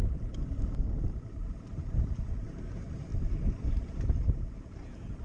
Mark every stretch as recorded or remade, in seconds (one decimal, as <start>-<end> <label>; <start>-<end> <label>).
0.0-1.0 recorded; 1.0-3.1 remade; 3.1-3.8 recorded; 3.8-5.2 remade